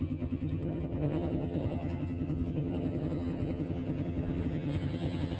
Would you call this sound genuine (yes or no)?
no